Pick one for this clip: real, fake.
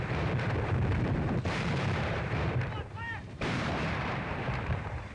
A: fake